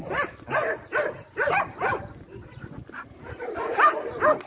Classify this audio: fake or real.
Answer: real